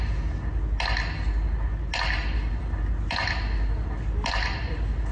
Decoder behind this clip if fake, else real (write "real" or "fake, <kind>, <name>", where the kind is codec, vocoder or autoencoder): real